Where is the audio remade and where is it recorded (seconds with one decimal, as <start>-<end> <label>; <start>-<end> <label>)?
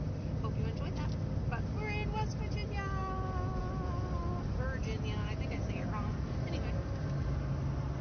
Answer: 0.0-8.0 recorded